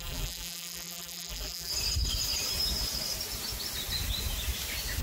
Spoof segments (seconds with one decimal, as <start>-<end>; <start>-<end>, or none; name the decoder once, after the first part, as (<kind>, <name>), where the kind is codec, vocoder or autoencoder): 0.0-1.7 (vocoder, BigVGAN v2)